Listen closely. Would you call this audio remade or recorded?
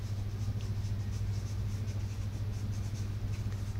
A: recorded